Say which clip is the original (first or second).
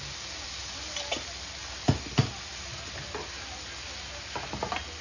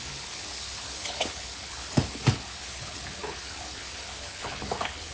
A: first